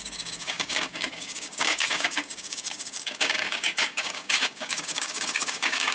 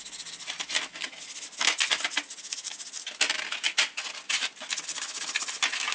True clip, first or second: second